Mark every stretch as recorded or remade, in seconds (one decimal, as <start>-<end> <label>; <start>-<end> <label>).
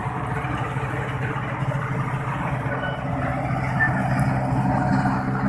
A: 0.0-5.5 recorded